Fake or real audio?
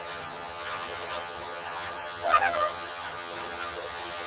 fake